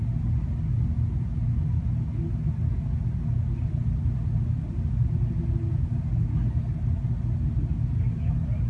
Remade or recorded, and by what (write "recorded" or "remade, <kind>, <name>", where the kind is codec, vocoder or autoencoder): recorded